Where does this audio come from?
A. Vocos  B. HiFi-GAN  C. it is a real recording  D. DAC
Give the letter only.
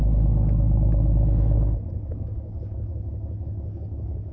D